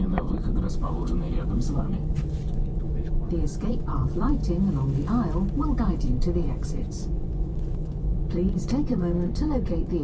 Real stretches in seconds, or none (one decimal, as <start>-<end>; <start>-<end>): 4.4-5.8